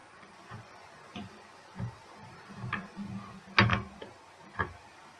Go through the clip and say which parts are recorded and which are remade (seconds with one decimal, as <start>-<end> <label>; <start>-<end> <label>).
0.0-3.1 remade; 3.1-5.2 recorded